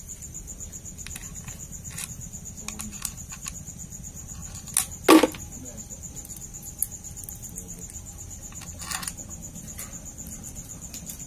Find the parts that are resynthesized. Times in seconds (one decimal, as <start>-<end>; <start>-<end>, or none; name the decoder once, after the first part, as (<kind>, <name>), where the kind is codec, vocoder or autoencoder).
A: none